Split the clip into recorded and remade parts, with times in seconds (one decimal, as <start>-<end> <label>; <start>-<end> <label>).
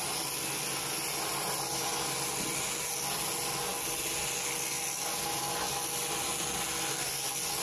0.0-7.6 recorded